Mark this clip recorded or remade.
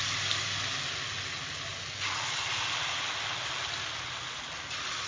recorded